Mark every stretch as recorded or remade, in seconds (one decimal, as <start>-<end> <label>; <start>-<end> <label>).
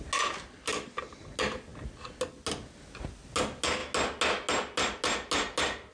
0.0-5.9 recorded